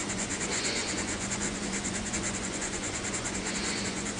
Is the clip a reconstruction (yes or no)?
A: yes